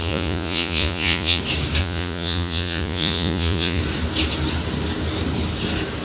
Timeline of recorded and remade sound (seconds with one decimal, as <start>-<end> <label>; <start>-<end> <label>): 0.0-1.4 remade; 1.4-1.8 recorded; 1.8-3.8 remade; 3.8-6.0 recorded